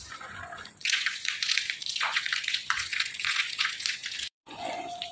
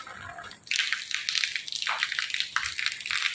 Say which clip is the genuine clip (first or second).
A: second